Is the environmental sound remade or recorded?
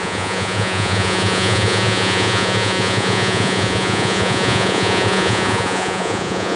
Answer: remade